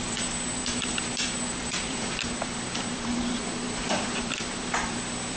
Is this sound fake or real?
fake